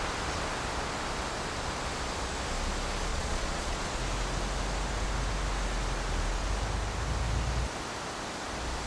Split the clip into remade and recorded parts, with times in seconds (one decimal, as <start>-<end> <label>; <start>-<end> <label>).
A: 0.0-3.1 recorded; 3.1-4.0 remade; 4.0-8.9 recorded